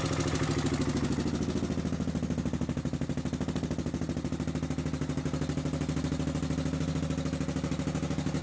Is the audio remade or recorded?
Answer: recorded